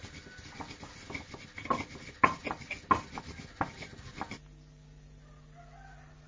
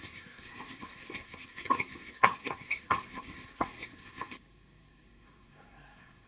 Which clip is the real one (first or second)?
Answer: first